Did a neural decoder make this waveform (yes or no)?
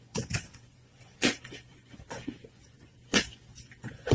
yes